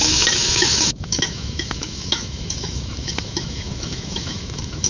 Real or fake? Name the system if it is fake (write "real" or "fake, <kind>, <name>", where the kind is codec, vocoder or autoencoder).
fake, autoencoder, DAC-VAE